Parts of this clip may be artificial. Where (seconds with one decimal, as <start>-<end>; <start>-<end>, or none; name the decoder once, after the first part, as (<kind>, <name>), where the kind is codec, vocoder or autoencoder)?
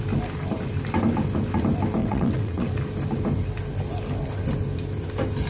2.0-2.7 (vocoder, WaveNeXt)